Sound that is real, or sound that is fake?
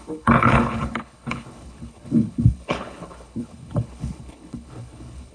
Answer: fake